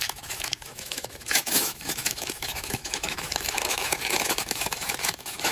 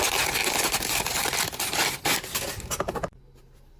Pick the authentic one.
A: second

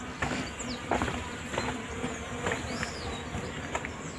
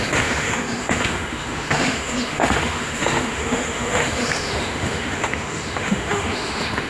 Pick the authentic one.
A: first